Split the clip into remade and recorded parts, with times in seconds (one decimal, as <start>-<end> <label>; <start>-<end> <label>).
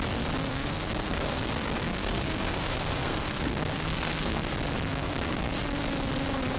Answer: 0.0-0.5 recorded; 0.5-4.5 remade; 4.5-4.9 recorded; 4.9-5.5 remade; 5.5-6.6 recorded